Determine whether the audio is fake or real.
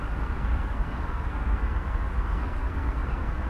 fake